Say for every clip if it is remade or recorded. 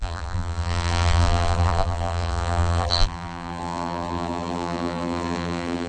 remade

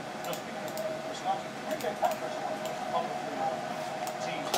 recorded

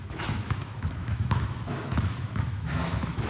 remade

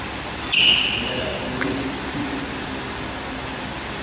recorded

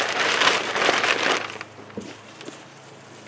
recorded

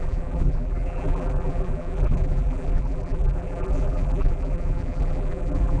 remade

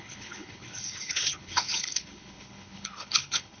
remade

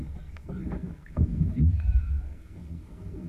remade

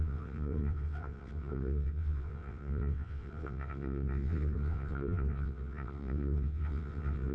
remade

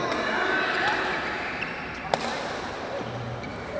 recorded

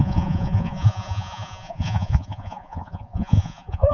remade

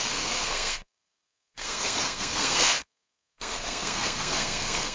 remade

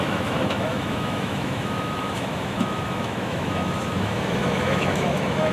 remade